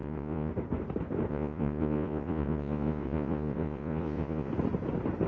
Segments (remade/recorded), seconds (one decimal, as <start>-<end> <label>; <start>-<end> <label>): 0.0-0.5 remade; 0.5-1.3 recorded; 1.3-4.5 remade; 4.5-5.3 recorded